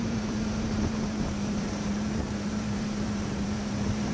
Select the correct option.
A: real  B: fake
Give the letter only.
B